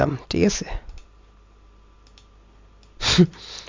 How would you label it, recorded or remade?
recorded